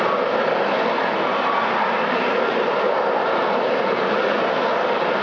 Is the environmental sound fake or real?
real